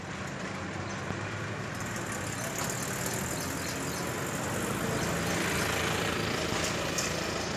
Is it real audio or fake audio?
real